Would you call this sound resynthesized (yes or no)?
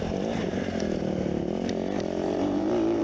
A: yes